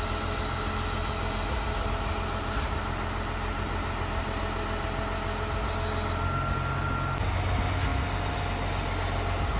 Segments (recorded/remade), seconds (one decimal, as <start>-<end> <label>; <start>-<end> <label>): 0.0-9.6 recorded